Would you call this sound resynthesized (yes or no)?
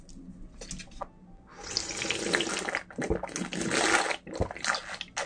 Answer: no